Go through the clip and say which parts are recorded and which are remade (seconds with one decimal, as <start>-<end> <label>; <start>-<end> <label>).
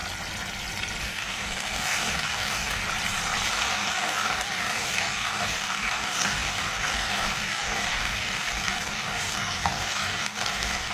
0.0-1.0 recorded; 1.0-2.8 remade; 2.8-3.5 recorded; 3.5-10.9 remade